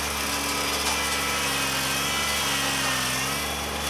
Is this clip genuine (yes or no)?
yes